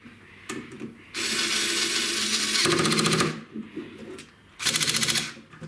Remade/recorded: recorded